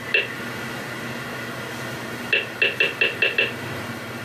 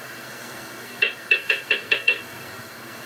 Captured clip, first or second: first